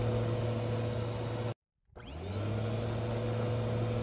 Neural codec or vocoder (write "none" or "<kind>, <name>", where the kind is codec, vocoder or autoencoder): none